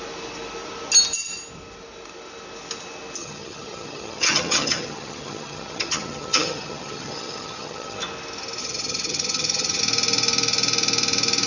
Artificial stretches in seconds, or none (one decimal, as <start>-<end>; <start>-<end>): 3.2-8.0; 8.6-9.8